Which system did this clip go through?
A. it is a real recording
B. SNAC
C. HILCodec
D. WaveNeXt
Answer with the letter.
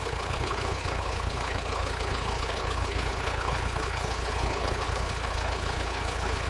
C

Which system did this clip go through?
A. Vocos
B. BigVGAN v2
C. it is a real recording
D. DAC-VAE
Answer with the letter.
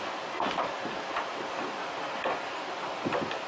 C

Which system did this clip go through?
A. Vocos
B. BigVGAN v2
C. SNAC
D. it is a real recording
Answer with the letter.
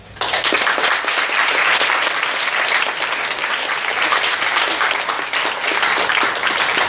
D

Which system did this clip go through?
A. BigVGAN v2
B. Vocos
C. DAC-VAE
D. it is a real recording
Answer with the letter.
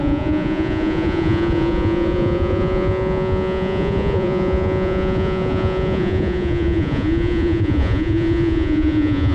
B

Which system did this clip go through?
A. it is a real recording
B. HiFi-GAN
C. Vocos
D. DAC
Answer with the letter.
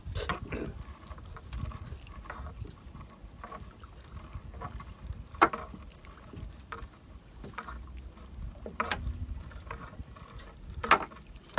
A